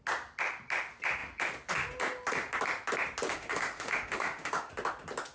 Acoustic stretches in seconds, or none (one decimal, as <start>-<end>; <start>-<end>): 0.0-3.3; 4.7-5.3